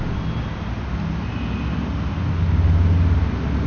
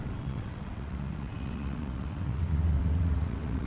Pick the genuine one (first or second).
first